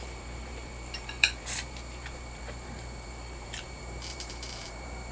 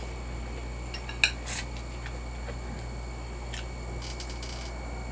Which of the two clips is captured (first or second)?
second